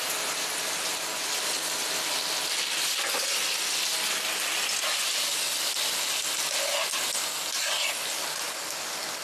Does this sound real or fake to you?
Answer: real